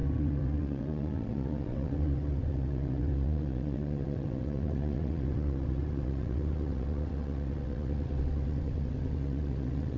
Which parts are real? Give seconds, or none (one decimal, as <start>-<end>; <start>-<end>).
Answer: none